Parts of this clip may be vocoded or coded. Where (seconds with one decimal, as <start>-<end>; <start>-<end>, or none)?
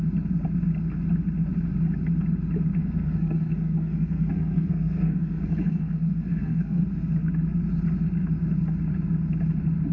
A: 2.8-6.8